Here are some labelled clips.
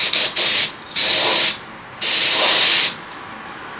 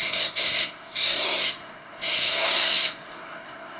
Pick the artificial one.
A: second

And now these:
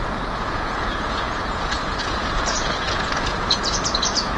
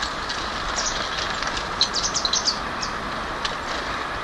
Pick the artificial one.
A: first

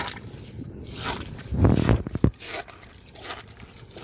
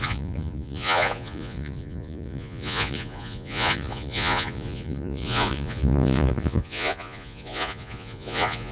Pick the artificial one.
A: second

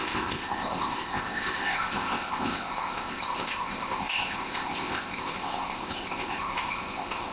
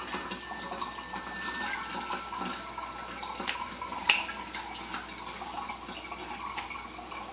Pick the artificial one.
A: first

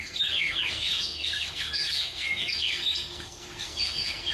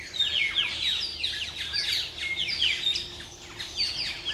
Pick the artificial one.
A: first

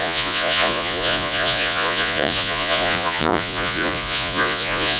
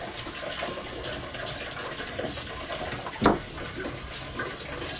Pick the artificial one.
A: first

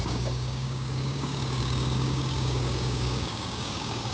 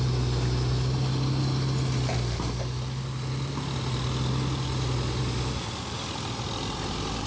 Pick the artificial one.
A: first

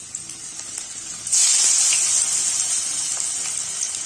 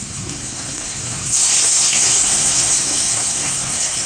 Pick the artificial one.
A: second